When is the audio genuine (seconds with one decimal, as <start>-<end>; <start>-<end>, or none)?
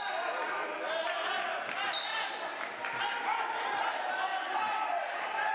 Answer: 2.1-3.8